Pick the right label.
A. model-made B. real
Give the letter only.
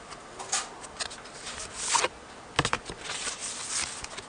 B